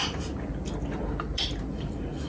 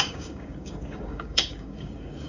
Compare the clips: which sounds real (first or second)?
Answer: first